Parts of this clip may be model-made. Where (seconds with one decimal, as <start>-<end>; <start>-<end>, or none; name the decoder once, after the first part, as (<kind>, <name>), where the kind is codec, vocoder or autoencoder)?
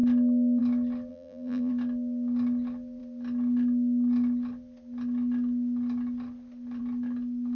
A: 1.1-1.7 (vocoder, BigVGAN v2)